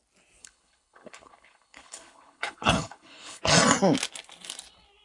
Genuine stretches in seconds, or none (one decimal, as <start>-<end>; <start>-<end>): 0.0-0.4; 3.4-5.0